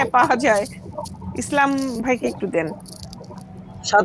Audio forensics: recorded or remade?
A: recorded